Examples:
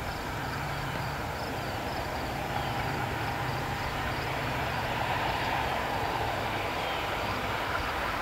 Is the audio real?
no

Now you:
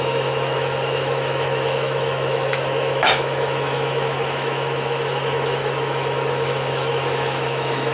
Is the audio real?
no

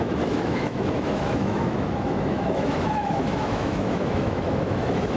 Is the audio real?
no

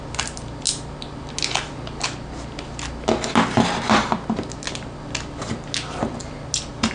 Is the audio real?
yes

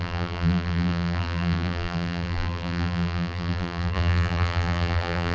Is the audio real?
no